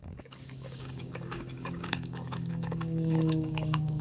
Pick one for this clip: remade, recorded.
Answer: remade